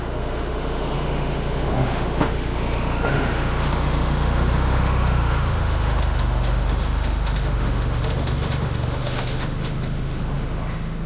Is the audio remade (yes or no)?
yes